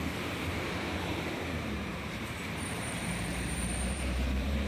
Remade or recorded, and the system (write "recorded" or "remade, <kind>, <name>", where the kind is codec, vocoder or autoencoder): remade, vocoder, BigVGAN v2